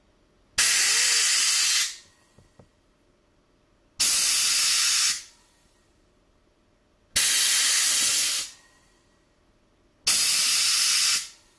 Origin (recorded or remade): recorded